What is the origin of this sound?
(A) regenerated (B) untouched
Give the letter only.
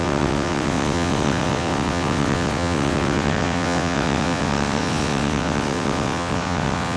A